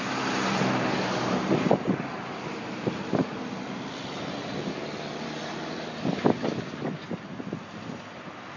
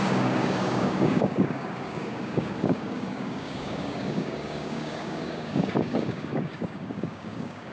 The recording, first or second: first